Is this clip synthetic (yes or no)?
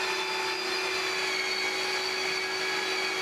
no